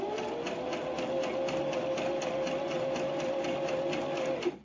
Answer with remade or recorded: recorded